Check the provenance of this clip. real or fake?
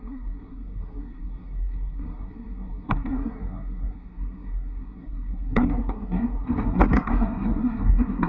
fake